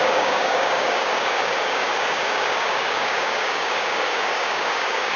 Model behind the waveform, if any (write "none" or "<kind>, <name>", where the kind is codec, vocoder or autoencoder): codec, DAC